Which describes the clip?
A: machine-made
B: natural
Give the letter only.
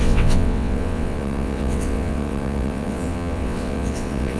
A